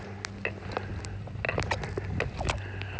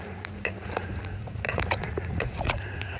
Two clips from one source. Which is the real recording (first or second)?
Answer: first